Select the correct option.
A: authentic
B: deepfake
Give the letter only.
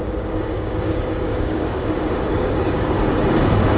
B